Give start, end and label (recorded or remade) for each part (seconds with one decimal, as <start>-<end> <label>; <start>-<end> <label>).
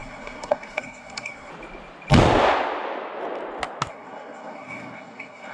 0.0-1.5 remade; 1.5-3.9 recorded; 3.9-5.5 remade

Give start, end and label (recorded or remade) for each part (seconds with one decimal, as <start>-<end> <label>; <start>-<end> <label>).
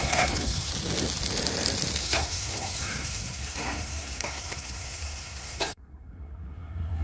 0.0-0.7 remade; 0.7-2.0 recorded; 2.0-7.0 remade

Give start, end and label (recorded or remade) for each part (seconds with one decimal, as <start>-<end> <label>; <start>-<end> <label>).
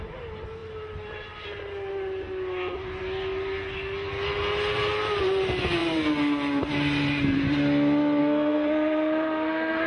0.0-8.2 recorded; 8.2-9.9 remade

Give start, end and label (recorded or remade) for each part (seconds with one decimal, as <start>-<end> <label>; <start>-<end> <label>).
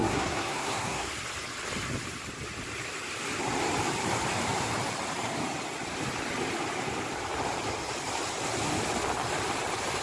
0.0-1.1 remade; 1.1-10.0 recorded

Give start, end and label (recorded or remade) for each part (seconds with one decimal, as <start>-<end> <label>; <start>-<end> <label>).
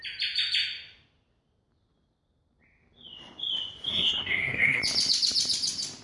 0.0-3.9 recorded; 3.9-4.8 remade; 4.8-6.0 recorded